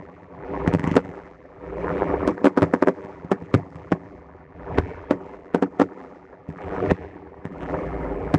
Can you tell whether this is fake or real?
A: fake